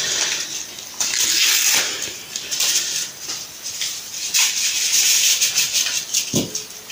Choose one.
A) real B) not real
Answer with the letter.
A